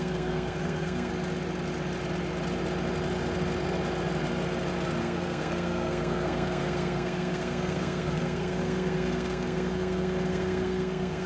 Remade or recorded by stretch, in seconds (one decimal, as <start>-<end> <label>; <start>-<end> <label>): 0.0-1.1 remade; 1.1-5.0 recorded; 5.0-11.3 remade